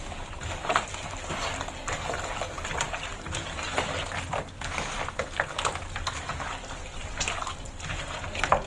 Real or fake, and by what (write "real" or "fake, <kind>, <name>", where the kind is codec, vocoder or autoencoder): real